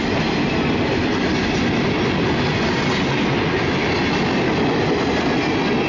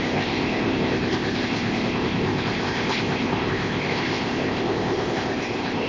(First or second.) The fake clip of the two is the second